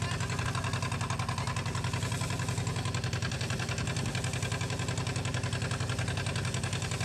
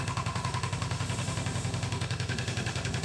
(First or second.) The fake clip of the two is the second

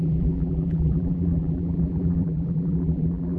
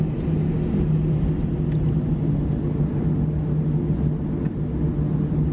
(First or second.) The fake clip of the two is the first